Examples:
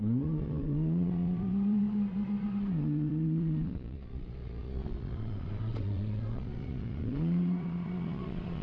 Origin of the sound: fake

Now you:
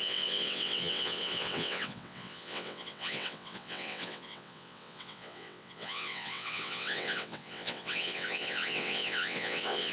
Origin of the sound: fake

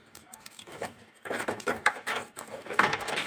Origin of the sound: fake